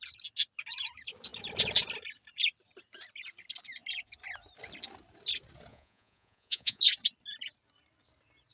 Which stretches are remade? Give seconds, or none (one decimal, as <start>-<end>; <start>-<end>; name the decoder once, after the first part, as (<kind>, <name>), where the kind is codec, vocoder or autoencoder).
5.7-6.8 (vocoder, Vocos)